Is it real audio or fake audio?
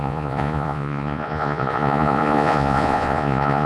fake